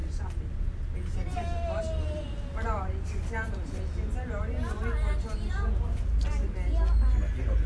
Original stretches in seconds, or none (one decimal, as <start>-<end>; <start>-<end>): 0.0-2.9; 3.8-7.7